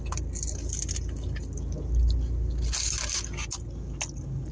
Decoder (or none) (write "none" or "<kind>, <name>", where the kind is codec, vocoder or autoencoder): none